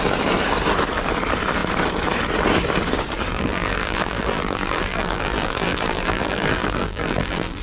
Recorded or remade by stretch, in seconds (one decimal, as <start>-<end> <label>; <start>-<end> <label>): 0.0-3.3 recorded; 3.3-7.6 remade